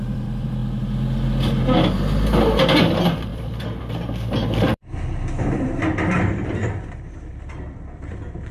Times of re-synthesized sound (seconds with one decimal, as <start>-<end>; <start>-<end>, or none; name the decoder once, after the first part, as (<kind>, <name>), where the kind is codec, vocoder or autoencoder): 0.0-0.6 (vocoder, BigVGAN v2); 2.8-8.5